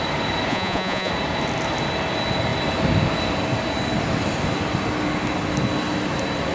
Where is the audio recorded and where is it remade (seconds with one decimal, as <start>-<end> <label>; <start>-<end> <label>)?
0.0-0.5 recorded; 0.5-1.1 remade; 1.1-6.5 recorded

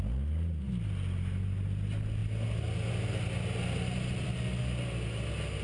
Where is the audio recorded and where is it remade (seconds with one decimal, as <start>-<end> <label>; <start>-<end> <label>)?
0.0-5.6 recorded

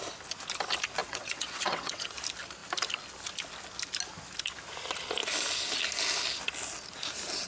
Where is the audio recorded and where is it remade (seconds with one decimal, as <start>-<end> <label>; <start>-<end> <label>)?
0.0-1.0 recorded; 1.0-2.1 remade; 2.1-7.5 recorded

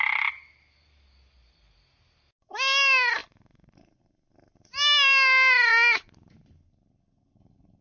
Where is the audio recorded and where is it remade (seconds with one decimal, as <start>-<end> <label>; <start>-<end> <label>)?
0.0-7.8 recorded

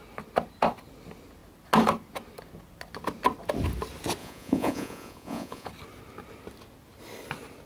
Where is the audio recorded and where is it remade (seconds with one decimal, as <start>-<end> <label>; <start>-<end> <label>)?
0.0-4.2 recorded; 4.2-5.7 remade; 5.7-7.7 recorded

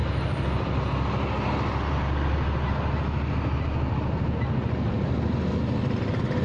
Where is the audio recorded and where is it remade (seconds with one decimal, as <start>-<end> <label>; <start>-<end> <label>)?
0.0-6.4 recorded

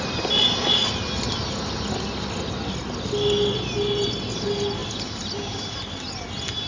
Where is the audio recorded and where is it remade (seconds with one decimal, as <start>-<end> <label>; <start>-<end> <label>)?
0.0-6.7 recorded

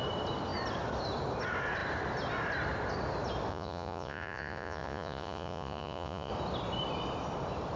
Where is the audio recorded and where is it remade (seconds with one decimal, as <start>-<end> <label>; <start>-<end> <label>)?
0.0-3.5 recorded; 3.5-6.3 remade; 6.3-7.8 recorded